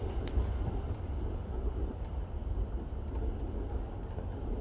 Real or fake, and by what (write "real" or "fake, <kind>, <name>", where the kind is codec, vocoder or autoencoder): real